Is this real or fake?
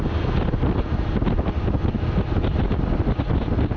real